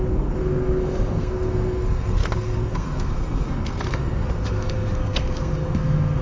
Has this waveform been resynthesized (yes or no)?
yes